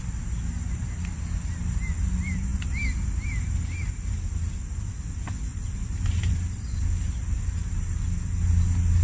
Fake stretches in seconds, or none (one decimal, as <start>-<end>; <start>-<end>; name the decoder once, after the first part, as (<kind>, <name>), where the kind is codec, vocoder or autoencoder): none